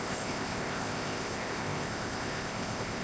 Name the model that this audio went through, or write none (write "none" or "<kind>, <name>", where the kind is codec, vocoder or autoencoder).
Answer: codec, ZipCodec